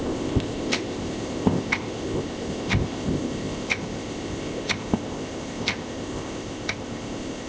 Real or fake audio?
fake